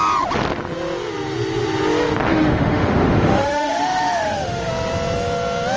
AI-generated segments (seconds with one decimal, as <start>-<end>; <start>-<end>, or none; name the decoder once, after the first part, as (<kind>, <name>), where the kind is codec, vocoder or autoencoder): 2.3-4.7 (autoencoder, DAC-VAE)